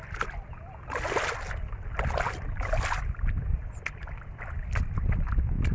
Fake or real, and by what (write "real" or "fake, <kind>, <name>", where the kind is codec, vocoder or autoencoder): real